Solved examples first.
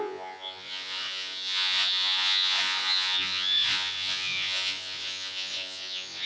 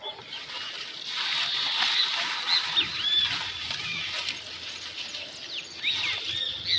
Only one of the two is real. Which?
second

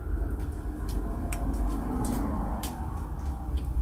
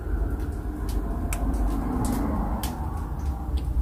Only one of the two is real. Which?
second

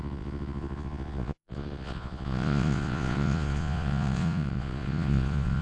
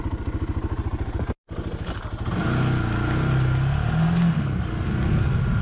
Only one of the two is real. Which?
second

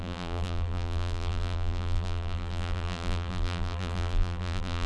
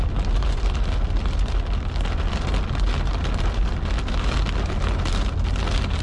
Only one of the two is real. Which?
second